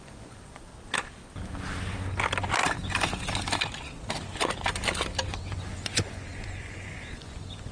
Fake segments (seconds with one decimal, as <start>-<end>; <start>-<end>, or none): 0.0-0.7; 5.3-7.7